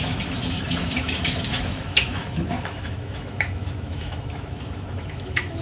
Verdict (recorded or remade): remade